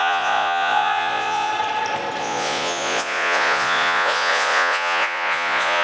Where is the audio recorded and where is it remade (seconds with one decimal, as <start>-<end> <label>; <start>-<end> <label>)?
0.0-1.5 remade; 1.5-2.2 recorded; 2.2-5.8 remade